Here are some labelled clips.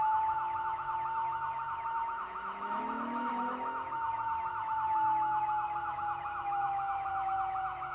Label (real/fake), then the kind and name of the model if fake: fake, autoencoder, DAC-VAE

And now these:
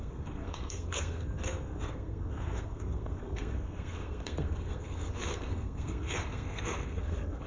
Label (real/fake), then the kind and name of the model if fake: fake, codec, SNAC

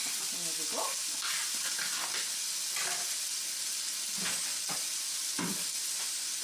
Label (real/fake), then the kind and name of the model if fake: real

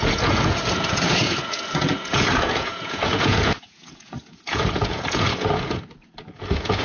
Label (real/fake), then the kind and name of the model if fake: fake, vocoder, Vocos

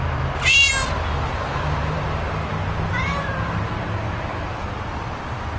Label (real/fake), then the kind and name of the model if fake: fake, vocoder, BigVGAN v2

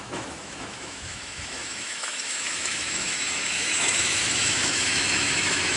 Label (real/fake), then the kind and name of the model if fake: fake, autoencoder, DAC-VAE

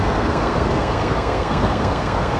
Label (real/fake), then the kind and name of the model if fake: fake, codec, SNAC